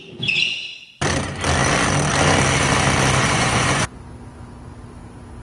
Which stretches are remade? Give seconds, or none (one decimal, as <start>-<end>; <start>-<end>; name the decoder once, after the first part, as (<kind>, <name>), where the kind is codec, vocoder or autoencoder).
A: 3.2-4.0 (vocoder, Vocos)